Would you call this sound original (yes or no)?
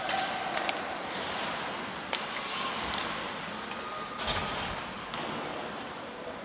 yes